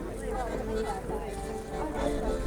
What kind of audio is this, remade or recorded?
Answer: recorded